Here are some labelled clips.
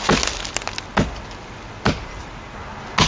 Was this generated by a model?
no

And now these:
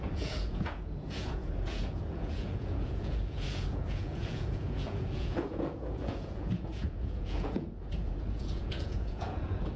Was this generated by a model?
yes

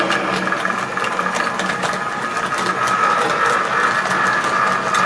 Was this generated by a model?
no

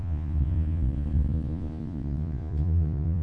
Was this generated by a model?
yes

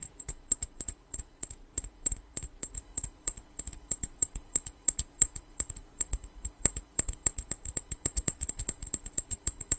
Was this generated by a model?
yes